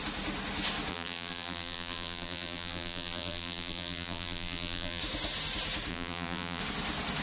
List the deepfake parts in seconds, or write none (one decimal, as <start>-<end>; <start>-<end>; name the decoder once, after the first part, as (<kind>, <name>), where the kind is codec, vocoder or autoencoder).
0.9-5.0 (vocoder, BigVGAN v2); 5.9-6.6